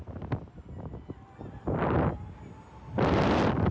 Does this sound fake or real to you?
real